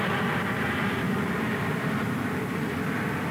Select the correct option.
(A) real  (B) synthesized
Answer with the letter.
A